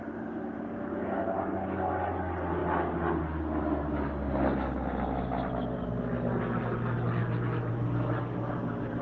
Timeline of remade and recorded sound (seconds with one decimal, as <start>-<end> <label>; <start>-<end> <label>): 0.0-9.0 recorded